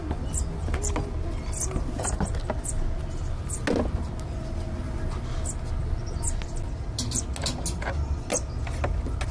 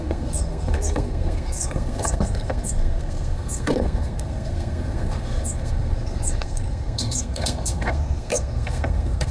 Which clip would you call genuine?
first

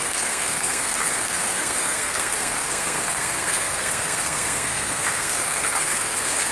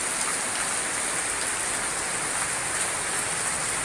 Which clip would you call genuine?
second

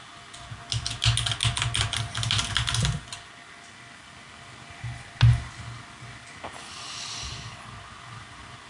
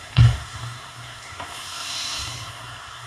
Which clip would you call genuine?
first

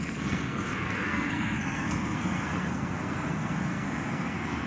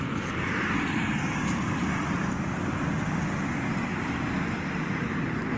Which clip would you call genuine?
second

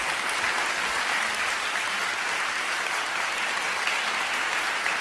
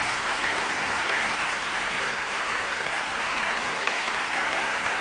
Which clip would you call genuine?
first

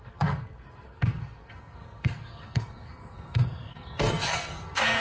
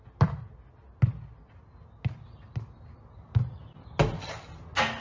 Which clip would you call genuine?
second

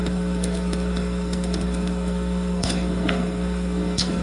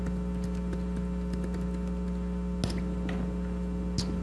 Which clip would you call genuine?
second